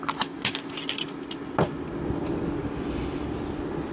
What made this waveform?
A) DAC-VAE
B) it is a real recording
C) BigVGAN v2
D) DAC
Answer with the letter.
B